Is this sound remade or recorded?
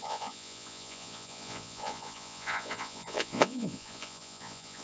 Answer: remade